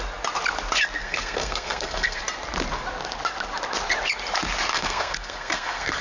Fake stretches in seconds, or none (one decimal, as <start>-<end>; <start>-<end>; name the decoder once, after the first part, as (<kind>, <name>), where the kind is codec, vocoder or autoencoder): 1.0-2.2 (codec, SNAC); 4.7-6.0